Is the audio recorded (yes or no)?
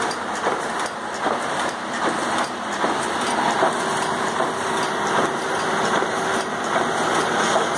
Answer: yes